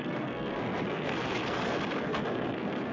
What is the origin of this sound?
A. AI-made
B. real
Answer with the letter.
A